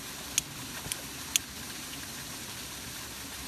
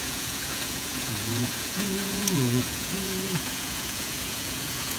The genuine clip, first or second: first